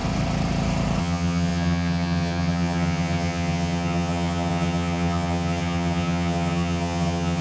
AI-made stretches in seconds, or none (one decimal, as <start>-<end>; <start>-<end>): 1.0-7.4